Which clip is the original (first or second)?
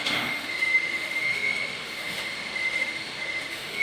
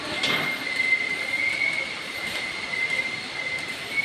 second